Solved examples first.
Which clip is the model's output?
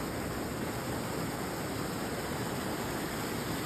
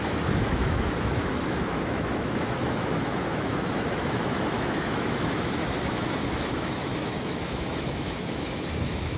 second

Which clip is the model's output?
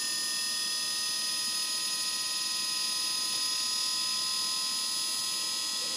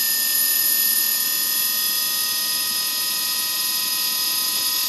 second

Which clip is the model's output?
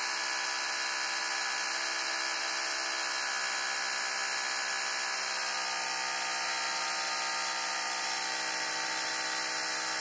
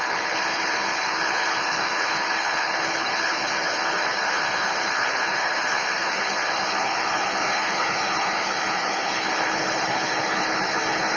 second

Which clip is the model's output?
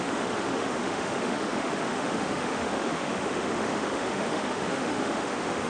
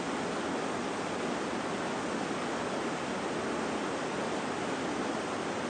first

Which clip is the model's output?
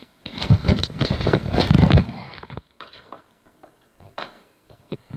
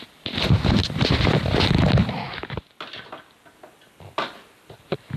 first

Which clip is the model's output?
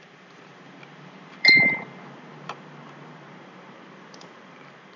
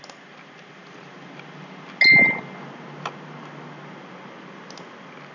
first